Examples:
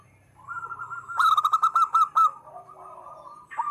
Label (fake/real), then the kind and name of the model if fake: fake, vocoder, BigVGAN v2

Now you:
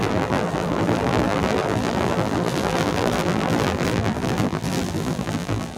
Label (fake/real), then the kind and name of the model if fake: fake, vocoder, BigVGAN v2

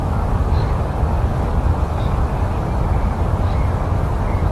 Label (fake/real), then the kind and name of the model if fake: fake, codec, DAC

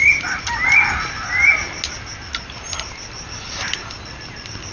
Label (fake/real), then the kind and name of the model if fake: real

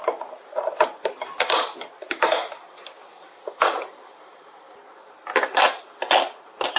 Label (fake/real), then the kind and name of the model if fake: real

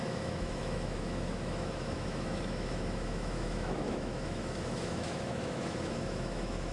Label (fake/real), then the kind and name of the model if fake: fake, autoencoder, DAC-VAE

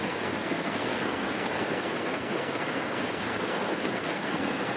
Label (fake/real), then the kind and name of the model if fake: fake, codec, SNAC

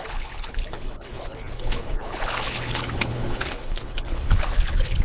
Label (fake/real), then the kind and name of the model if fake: fake, codec, HILCodec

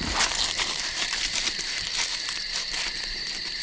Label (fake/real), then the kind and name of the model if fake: fake, vocoder, BigVGAN v2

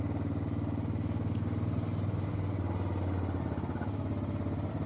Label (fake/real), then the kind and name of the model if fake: real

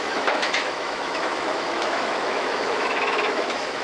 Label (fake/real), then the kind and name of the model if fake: fake, autoencoder, DAC-VAE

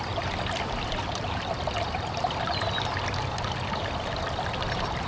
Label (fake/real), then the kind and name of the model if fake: real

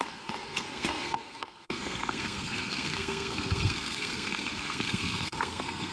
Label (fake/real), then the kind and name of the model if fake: fake, codec, SNAC